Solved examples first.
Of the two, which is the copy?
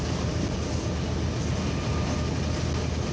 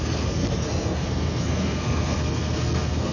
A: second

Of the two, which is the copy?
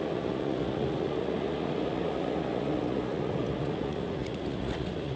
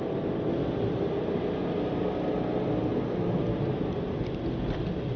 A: first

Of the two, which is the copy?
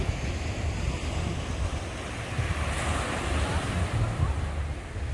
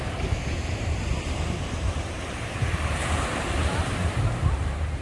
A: second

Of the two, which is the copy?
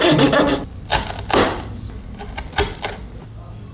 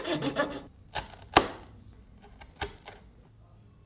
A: first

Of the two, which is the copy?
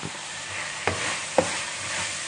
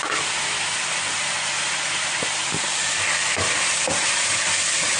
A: second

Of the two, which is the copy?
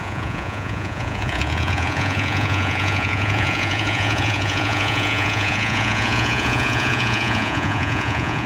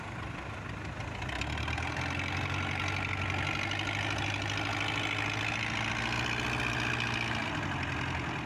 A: first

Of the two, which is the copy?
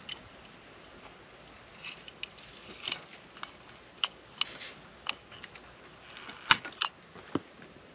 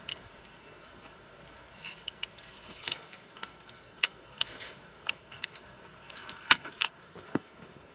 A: second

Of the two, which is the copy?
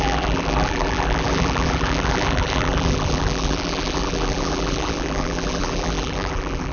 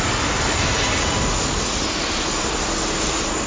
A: first